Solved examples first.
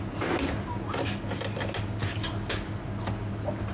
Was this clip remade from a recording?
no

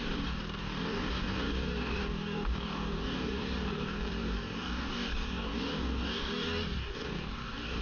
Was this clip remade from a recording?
yes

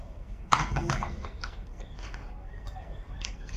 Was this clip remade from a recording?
yes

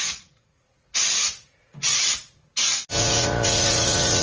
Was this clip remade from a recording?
yes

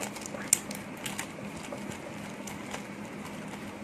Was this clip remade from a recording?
no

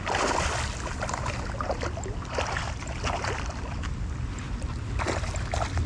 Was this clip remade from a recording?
no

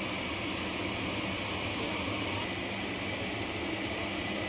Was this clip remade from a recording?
no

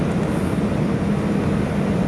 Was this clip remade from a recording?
no